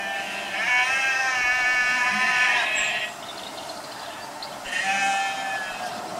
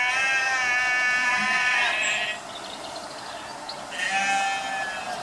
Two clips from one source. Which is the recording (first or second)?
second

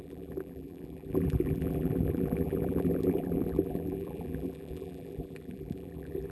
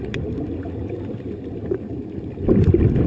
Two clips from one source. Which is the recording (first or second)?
second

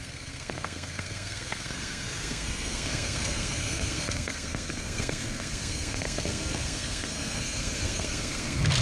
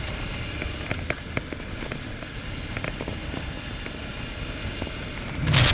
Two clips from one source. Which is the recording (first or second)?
second